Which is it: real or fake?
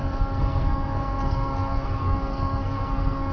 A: fake